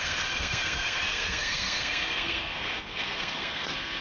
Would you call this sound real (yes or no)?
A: no